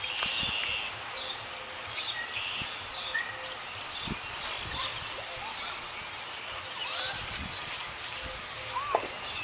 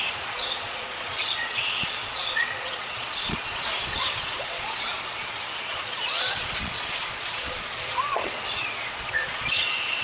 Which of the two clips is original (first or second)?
first